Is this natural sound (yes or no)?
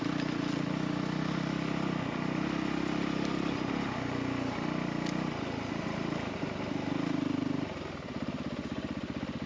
yes